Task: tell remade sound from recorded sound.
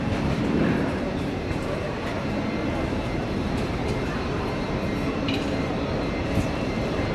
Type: remade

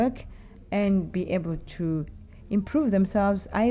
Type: recorded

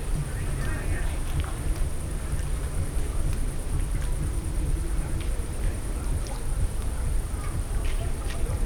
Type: remade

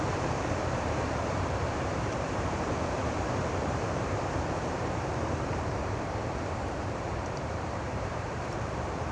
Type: remade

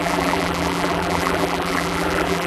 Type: remade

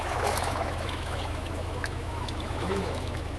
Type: remade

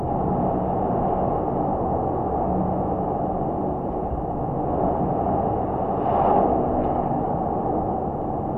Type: recorded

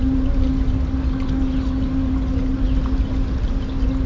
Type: recorded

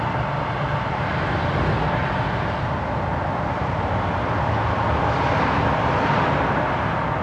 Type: recorded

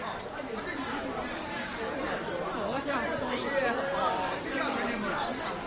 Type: remade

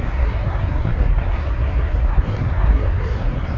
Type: remade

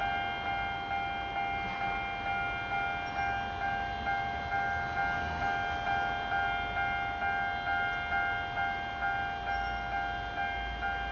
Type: recorded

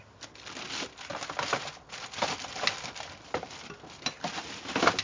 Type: recorded